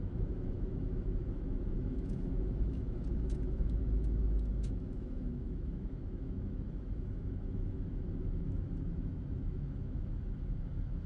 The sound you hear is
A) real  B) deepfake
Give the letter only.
B